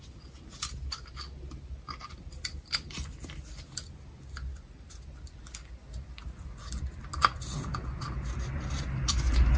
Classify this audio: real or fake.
real